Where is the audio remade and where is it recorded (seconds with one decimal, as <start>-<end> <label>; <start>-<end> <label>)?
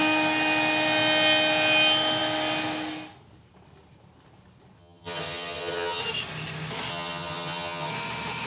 0.0-4.8 recorded; 4.8-6.0 remade; 6.0-6.9 recorded; 6.9-7.9 remade; 7.9-8.5 recorded